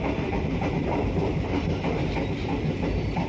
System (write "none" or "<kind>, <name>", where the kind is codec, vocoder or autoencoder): vocoder, BigVGAN v2